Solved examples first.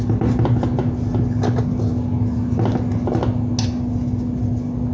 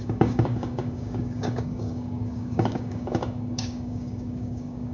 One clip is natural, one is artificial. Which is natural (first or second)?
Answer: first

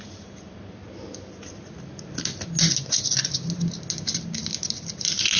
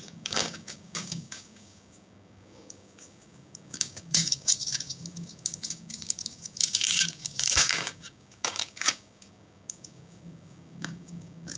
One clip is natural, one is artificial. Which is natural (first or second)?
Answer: first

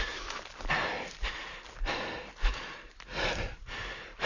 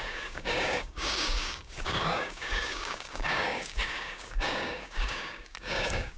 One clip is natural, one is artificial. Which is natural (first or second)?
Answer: first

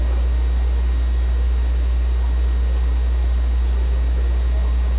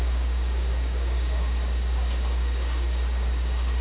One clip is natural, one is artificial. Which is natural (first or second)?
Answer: first